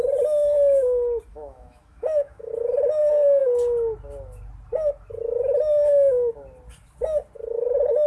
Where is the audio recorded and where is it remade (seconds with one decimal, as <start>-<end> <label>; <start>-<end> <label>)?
0.0-1.3 recorded; 1.3-2.5 remade; 2.5-8.1 recorded